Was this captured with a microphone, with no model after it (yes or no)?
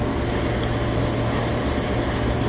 yes